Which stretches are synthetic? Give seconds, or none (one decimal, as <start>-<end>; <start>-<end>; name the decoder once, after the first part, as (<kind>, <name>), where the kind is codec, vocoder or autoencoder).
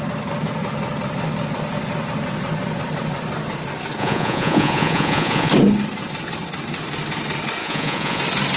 4.0-5.5 (vocoder, Vocos); 7.6-8.2